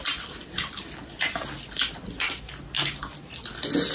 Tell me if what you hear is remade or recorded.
recorded